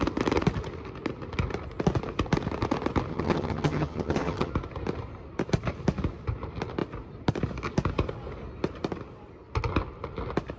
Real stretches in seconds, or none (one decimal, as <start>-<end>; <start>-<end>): 0.0-3.1; 4.5-10.6